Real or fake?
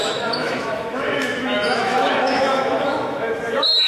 fake